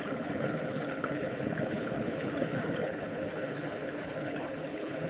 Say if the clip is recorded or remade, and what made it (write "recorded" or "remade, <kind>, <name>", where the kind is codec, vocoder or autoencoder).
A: remade, codec, HILCodec